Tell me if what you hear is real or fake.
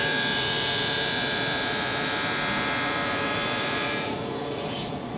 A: fake